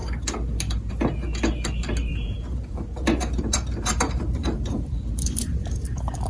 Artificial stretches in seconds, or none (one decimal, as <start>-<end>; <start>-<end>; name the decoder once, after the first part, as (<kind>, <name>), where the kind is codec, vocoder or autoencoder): 2.1-6.3 (vocoder, BigVGAN v2)